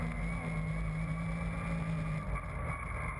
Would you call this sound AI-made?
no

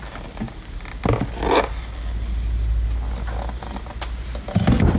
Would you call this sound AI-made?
no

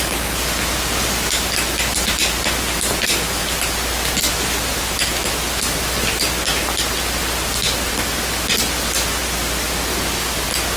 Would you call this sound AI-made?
no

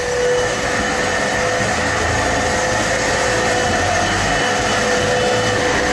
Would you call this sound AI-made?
no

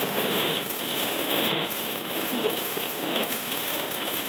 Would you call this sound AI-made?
yes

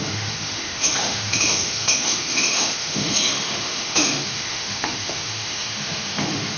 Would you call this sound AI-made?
yes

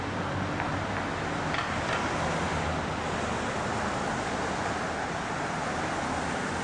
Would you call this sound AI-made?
no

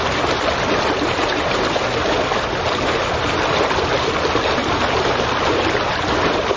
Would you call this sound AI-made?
no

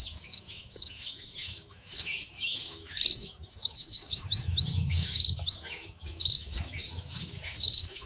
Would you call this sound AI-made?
yes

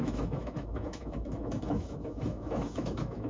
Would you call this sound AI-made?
yes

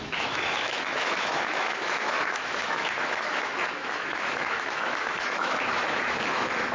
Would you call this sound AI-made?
yes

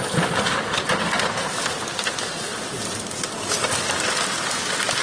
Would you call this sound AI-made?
no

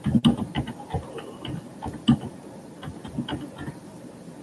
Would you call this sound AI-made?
no